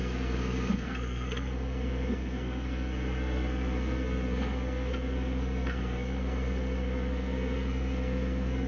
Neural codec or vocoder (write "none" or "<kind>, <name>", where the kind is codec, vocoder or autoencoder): codec, SNAC